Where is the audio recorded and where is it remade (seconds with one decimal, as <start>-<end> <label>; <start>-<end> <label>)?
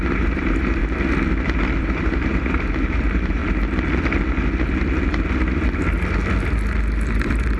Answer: 0.0-0.8 remade; 0.8-1.8 recorded; 1.8-3.4 remade; 3.4-7.1 recorded; 7.1-7.6 remade